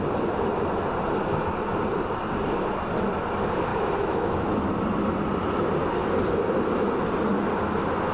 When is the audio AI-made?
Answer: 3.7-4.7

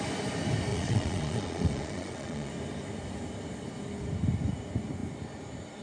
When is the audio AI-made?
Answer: 0.7-2.5

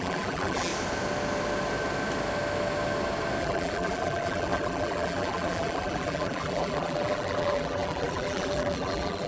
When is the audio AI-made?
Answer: 0.0-0.7; 3.4-9.3

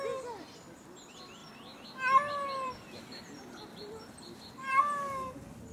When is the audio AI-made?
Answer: 1.4-4.8

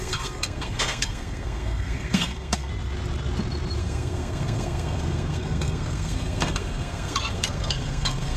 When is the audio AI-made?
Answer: 0.0-2.7; 3.8-8.4

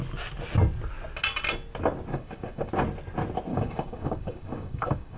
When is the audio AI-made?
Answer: 2.1-2.7; 3.5-5.2

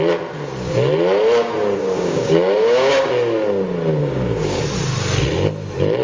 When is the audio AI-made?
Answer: 1.8-3.1; 4.0-4.6

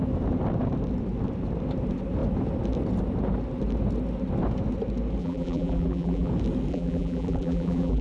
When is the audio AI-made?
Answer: 5.2-6.3; 6.7-8.0